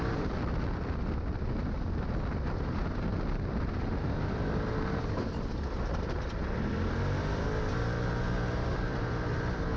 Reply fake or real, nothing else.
fake